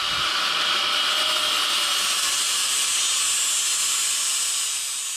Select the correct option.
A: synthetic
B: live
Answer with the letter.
B